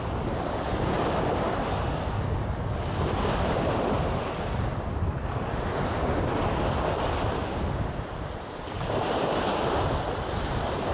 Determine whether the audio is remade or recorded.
recorded